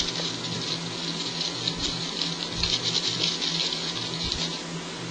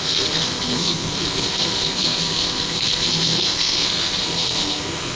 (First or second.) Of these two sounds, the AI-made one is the second